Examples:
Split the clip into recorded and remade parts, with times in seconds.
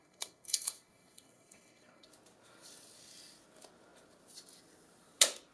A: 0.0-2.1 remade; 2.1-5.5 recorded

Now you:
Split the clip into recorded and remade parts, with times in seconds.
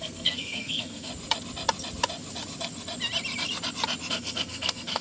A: 0.0-1.1 remade; 1.1-4.1 recorded; 4.1-5.0 remade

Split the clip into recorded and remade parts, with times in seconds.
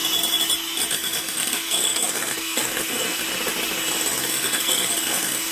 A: 0.0-0.9 recorded; 0.9-3.2 remade; 3.2-4.2 recorded; 4.2-5.5 remade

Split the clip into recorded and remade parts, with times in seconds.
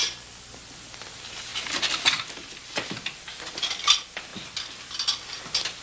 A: 0.0-5.8 recorded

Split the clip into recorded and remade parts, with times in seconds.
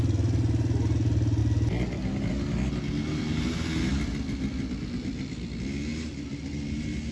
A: 0.0-7.1 recorded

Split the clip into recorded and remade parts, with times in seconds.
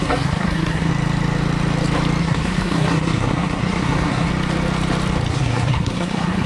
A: 0.0-0.9 remade; 0.9-2.2 recorded; 2.2-4.3 remade; 4.3-5.3 recorded; 5.3-6.5 remade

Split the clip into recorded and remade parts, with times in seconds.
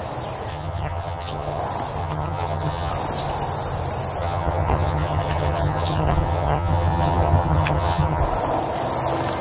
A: 0.0-0.5 recorded; 0.5-1.6 remade; 1.6-2.0 recorded; 2.0-2.9 remade; 2.9-4.2 recorded; 4.2-8.2 remade; 8.2-9.4 recorded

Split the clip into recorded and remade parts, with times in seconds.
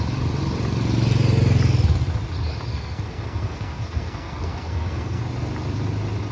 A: 0.0-2.7 recorded; 2.7-5.2 remade; 5.2-6.3 recorded